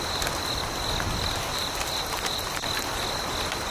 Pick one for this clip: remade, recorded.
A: recorded